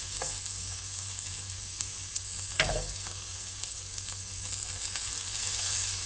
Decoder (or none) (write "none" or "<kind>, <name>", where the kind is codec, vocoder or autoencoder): codec, SNAC